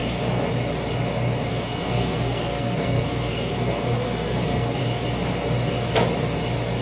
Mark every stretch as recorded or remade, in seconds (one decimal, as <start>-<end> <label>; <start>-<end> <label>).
0.0-0.5 remade; 0.5-1.5 recorded; 1.5-4.8 remade; 4.8-6.8 recorded

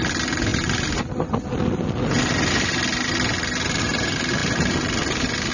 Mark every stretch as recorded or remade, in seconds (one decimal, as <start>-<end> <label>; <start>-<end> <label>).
0.0-5.5 recorded